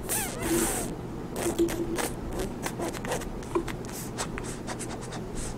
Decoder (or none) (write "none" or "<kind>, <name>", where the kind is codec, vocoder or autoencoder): none